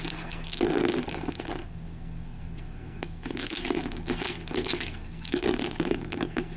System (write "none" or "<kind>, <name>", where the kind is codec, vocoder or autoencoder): codec, SNAC